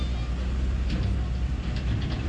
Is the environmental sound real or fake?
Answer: real